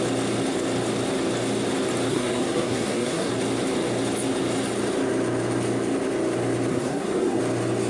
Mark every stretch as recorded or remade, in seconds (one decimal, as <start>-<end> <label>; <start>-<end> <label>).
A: 0.0-2.1 recorded; 2.1-3.3 remade; 3.3-6.7 recorded; 6.7-7.4 remade; 7.4-7.9 recorded